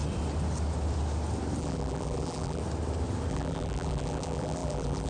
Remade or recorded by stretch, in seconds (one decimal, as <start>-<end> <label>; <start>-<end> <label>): 0.0-1.6 recorded; 1.6-2.6 remade; 2.6-3.3 recorded; 3.3-5.1 remade